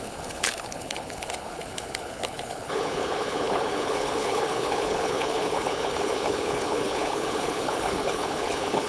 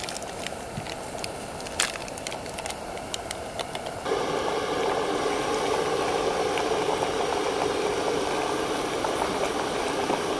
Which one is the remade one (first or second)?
first